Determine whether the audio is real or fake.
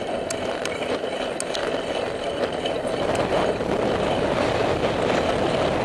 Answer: real